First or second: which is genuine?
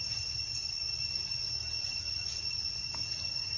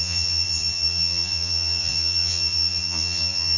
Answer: first